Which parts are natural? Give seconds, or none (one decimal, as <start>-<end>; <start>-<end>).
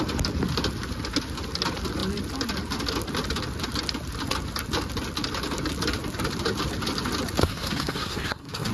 0.0-7.4